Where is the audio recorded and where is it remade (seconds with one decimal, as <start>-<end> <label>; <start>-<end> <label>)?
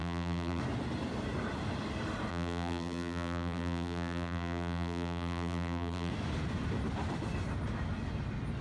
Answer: 0.0-0.6 remade; 0.6-2.3 recorded; 2.3-6.1 remade; 6.1-8.6 recorded